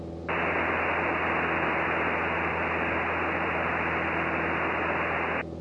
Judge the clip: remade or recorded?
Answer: recorded